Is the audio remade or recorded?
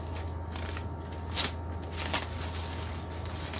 recorded